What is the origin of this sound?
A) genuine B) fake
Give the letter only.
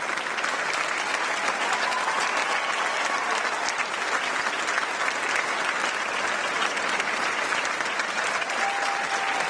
A